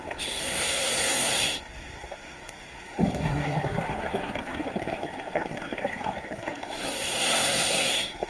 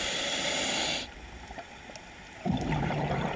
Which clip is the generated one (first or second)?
first